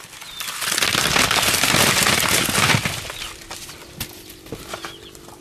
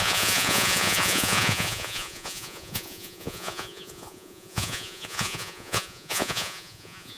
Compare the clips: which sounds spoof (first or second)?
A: second